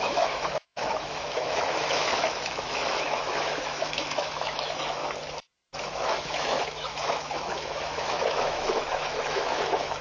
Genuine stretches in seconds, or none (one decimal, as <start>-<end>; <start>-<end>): 5.0-5.8